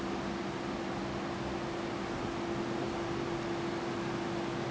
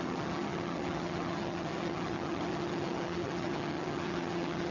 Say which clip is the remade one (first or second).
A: second